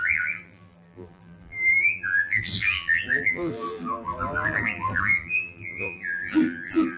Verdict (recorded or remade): remade